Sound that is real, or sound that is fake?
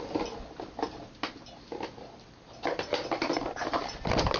real